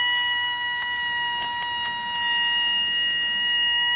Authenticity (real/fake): real